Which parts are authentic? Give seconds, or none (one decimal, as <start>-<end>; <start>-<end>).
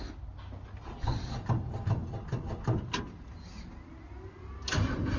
0.0-5.2